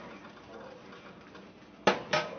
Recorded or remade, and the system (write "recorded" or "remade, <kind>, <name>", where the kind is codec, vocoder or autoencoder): recorded